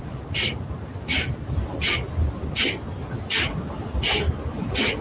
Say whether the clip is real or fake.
real